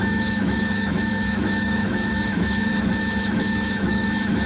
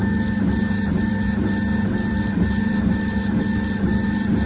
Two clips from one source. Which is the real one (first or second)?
second